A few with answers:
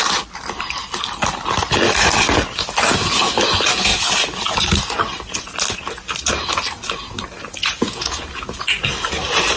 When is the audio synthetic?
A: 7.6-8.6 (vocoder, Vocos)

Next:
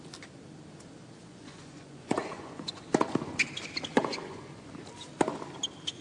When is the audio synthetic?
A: 1.2-2.8 (vocoder, Vocos); 3.9-4.7

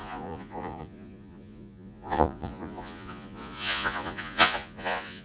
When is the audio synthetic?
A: 0.0-5.2 (vocoder, Vocos)

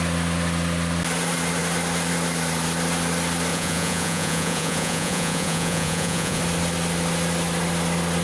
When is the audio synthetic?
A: 3.5-6.4 (vocoder, Vocos)

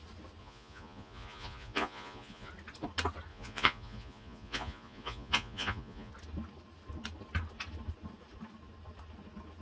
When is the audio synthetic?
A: 0.4-2.5 (vocoder, Vocos); 3.3-6.1

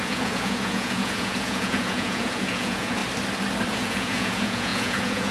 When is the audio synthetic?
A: 0.0-3.0 (vocoder, Vocos); 3.7-5.3

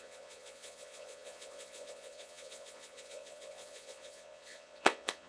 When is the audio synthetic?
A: 0.0-5.3 (vocoder, Vocos)

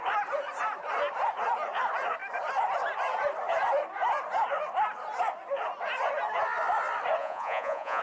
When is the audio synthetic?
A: 7.2-8.0 (vocoder, Vocos)